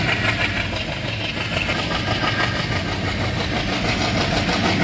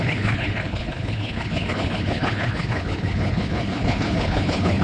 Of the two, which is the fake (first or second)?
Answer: second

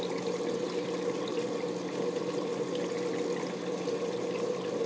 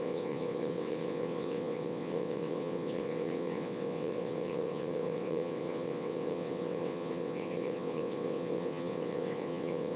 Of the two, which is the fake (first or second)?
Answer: second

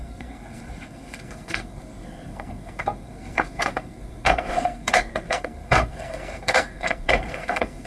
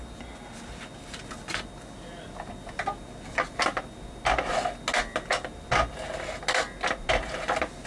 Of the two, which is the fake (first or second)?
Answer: first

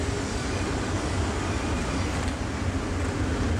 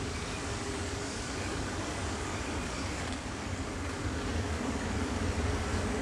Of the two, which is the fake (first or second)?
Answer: second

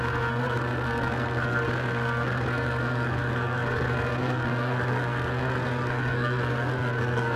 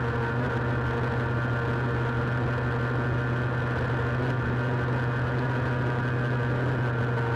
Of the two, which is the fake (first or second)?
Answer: first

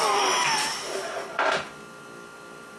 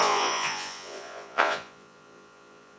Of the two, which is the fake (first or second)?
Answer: second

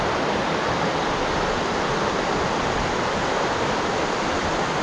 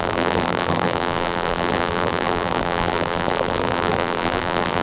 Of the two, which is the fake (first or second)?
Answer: second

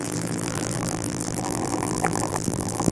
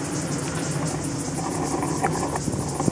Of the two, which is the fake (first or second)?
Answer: first